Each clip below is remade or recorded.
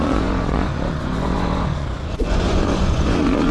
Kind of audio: remade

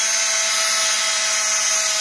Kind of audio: recorded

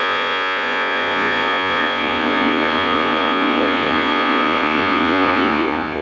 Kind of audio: remade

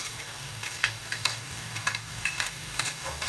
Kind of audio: remade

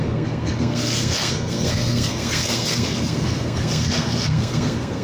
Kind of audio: remade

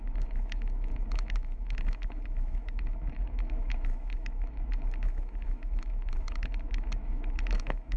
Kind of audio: remade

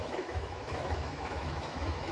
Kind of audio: remade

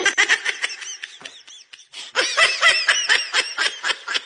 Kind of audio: recorded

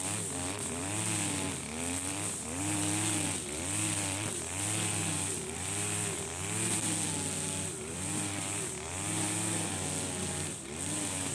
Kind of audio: recorded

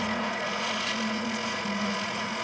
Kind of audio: remade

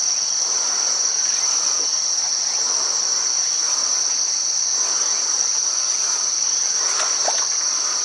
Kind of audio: recorded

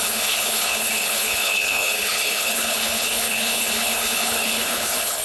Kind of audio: remade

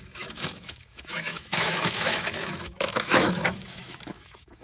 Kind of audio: remade